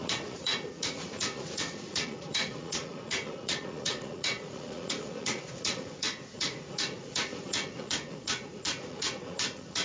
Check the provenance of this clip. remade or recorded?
remade